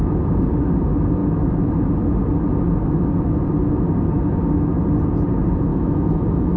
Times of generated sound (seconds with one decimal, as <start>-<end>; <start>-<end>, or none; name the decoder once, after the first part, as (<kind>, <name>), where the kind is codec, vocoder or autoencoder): 5.7-6.6 (autoencoder, DAC-VAE)